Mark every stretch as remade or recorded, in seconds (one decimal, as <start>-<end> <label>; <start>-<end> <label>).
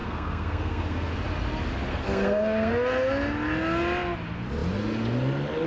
0.0-1.1 remade; 1.1-1.9 recorded; 1.9-2.7 remade; 2.7-5.7 recorded